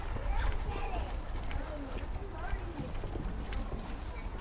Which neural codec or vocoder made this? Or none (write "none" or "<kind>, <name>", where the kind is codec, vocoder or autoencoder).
none